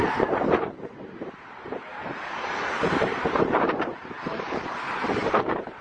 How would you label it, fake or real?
fake